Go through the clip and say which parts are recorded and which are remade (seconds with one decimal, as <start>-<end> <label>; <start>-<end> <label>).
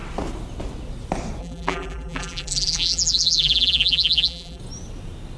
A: 0.0-1.4 recorded; 1.4-4.6 remade; 4.6-5.4 recorded